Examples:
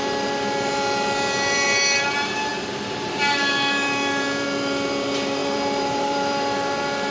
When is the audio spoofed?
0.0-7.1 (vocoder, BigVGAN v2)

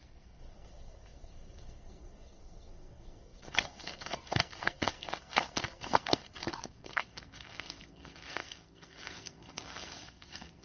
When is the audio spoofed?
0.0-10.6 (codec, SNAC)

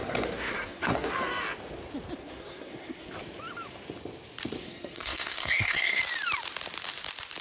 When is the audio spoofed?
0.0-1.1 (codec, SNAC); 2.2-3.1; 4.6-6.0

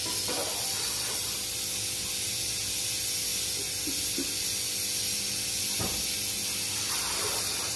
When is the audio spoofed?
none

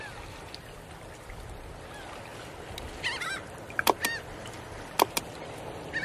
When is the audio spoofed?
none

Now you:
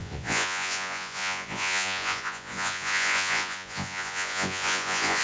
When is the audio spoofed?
0.0-5.2 (vocoder, Vocos)